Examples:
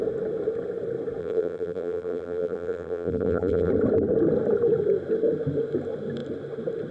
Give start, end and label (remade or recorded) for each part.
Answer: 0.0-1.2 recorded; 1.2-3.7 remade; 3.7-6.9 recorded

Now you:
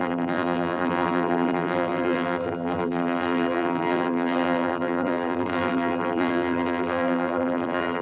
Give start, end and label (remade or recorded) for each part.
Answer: 0.0-8.0 remade